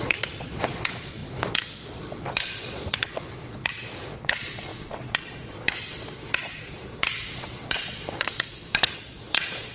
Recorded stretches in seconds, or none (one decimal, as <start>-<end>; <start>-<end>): none